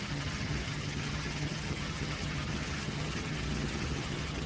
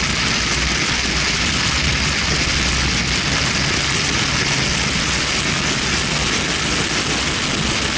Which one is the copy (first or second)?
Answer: first